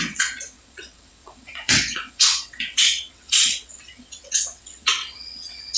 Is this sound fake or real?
fake